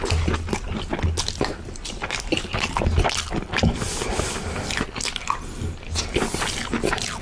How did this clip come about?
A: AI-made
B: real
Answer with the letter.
B